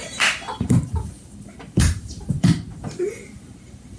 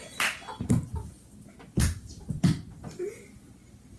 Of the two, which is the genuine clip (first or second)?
second